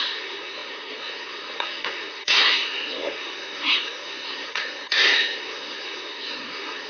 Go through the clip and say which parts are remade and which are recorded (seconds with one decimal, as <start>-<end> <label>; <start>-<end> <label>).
0.0-6.9 remade